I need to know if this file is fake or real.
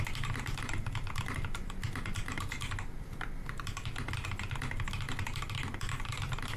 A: real